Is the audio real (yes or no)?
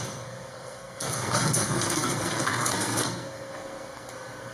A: no